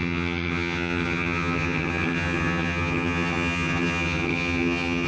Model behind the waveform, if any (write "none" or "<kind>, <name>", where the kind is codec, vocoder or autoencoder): vocoder, HiFi-GAN